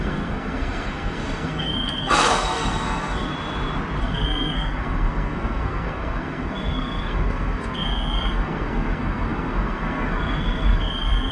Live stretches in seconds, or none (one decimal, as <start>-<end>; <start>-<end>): 3.3-4.0